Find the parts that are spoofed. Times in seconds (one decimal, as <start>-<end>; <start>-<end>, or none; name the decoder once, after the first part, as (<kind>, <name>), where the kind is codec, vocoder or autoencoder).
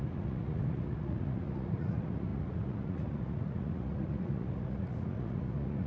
0.0-5.9 (vocoder, Vocos)